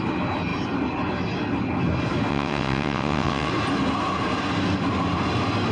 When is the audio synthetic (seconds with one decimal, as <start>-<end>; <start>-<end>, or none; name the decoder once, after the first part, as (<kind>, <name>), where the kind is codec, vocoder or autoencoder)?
2.3-3.5 (vocoder, WaveNeXt)